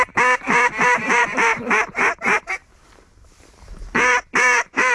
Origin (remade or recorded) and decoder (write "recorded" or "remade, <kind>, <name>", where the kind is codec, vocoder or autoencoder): remade, vocoder, BigVGAN v2